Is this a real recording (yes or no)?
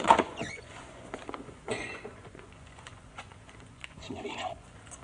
no